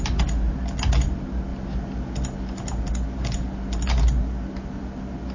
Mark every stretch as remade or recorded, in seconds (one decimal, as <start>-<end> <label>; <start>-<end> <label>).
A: 0.0-5.3 recorded

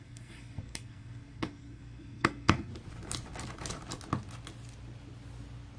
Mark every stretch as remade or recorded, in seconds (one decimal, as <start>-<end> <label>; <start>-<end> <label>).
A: 0.0-2.7 remade; 2.7-5.8 recorded